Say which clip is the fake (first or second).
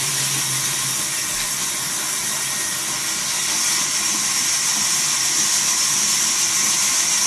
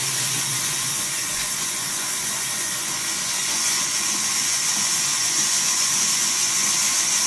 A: second